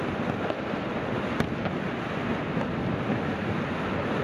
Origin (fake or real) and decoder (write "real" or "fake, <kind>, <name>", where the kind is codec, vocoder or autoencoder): real